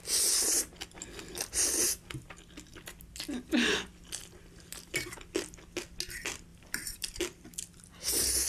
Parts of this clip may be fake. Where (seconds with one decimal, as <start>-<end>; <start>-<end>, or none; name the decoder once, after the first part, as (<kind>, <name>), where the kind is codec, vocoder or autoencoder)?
6.5-8.5 (vocoder, BigVGAN v2)